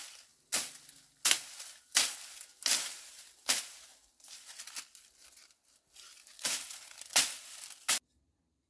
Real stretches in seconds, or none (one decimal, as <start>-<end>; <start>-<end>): 0.0-8.7

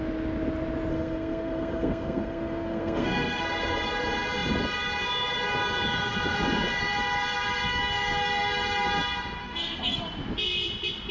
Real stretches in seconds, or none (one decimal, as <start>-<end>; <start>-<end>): 0.0-0.9; 3.4-9.4; 10.0-11.1